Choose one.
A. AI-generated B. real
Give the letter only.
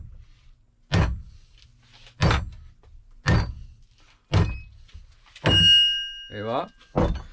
B